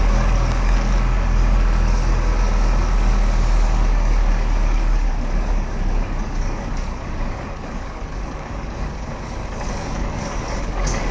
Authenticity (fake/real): fake